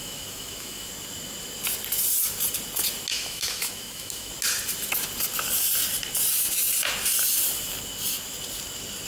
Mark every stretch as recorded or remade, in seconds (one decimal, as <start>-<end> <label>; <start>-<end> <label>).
0.0-0.9 remade; 0.9-3.1 recorded; 3.1-4.3 remade; 4.3-9.1 recorded